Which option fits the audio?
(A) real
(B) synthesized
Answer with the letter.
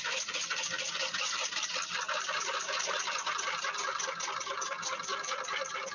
A